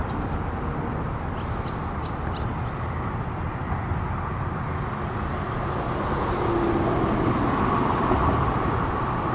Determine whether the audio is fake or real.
real